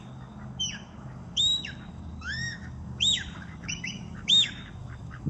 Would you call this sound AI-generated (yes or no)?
yes